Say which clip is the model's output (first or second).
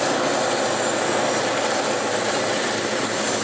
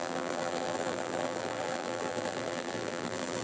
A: second